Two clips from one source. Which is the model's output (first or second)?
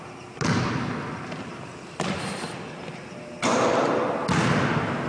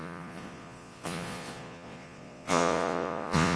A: second